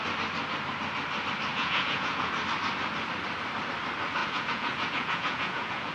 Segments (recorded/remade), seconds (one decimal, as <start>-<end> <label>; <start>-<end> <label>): 0.0-1.5 recorded; 1.5-2.3 remade; 2.3-4.2 recorded; 4.2-5.9 remade